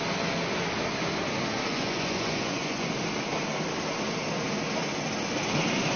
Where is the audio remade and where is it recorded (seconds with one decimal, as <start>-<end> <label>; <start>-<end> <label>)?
0.0-1.7 recorded; 1.7-2.9 remade; 2.9-6.0 recorded